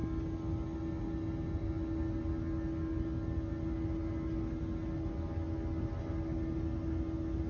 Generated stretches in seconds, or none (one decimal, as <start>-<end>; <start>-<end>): none